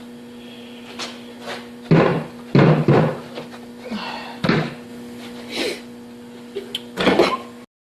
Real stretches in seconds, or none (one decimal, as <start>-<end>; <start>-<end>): 0.0-4.9; 5.6-7.9